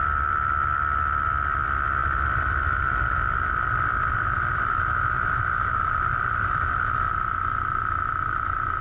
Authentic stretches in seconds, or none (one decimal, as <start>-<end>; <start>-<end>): 0.0-2.0; 6.7-8.8